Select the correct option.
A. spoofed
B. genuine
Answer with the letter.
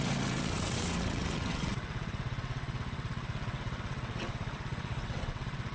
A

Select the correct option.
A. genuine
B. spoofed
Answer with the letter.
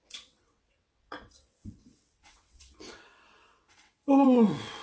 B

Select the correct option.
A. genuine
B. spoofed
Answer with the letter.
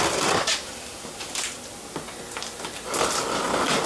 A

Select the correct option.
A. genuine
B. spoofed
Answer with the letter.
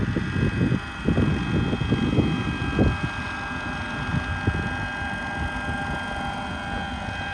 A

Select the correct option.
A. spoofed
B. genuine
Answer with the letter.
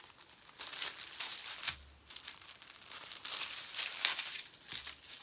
B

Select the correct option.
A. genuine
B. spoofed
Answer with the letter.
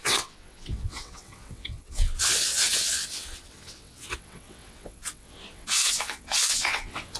B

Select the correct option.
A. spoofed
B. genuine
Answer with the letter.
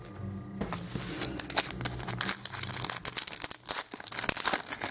B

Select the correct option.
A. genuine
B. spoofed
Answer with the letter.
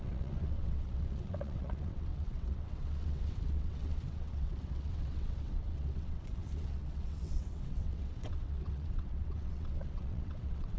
B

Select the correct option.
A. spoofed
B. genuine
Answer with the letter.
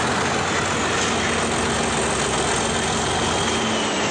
B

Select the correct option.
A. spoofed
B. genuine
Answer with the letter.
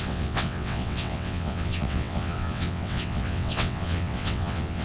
A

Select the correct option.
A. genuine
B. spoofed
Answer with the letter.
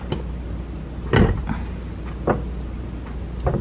A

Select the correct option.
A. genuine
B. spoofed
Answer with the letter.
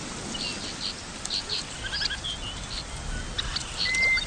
A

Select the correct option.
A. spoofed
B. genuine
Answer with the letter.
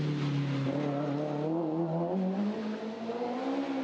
B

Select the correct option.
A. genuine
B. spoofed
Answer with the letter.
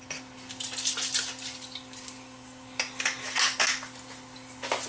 A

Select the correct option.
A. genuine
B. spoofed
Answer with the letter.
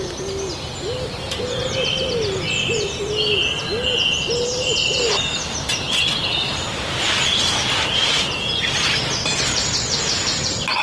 A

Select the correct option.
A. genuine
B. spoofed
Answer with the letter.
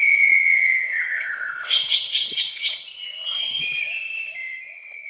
B